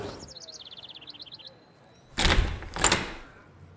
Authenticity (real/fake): real